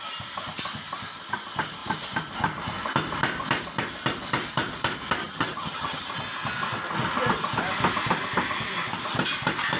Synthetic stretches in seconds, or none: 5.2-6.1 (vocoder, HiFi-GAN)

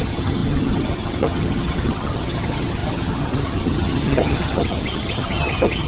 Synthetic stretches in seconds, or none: 0.0-5.9 (vocoder, HiFi-GAN)

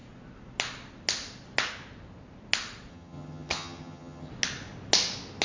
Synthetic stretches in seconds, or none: 2.9-4.3 (vocoder, HiFi-GAN)

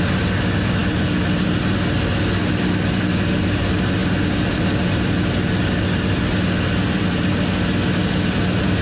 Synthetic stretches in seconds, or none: none

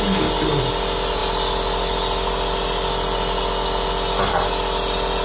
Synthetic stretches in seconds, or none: none

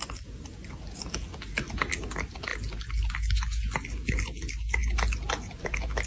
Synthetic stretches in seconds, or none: none

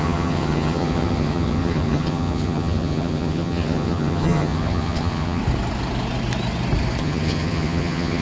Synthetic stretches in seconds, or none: 0.0-5.4 (vocoder, HiFi-GAN); 7.0-8.2